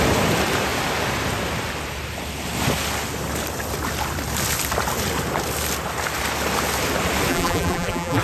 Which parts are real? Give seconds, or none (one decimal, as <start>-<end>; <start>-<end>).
0.0-7.3